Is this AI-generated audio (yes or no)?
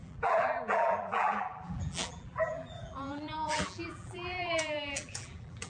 yes